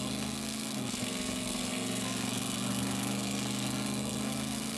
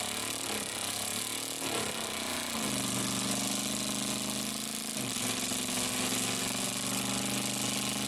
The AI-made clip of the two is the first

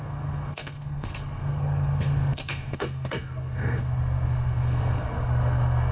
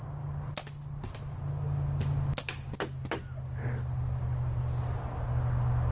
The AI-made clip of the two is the first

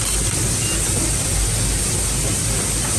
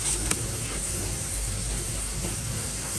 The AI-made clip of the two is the second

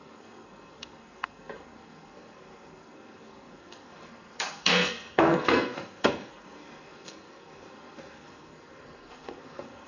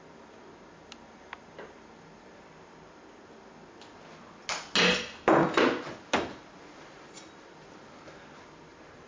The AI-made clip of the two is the first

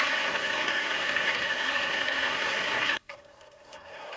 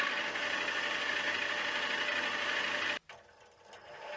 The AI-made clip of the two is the first